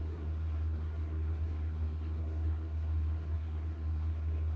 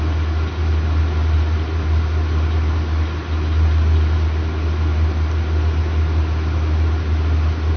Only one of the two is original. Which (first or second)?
second